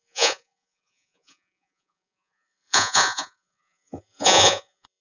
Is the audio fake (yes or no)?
yes